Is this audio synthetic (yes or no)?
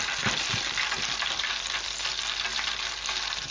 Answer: no